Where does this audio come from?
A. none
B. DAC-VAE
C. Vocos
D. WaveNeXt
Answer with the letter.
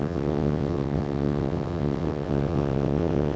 D